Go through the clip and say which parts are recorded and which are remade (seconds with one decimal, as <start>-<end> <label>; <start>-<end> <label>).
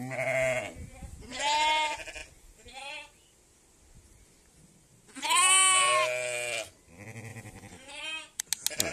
0.0-0.8 recorded; 0.8-1.3 remade; 1.3-7.3 recorded; 7.3-8.4 remade; 8.4-8.9 recorded